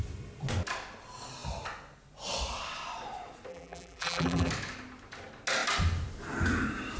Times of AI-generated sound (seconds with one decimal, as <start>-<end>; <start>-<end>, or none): 3.5-4.5